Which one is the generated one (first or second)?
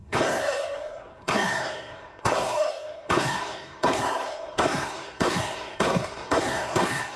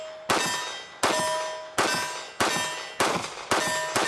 first